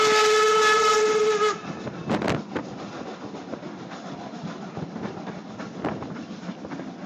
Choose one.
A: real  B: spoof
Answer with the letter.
A